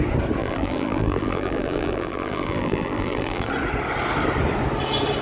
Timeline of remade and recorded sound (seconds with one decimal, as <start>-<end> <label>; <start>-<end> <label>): 0.0-0.4 recorded; 0.4-3.5 remade; 3.5-5.2 recorded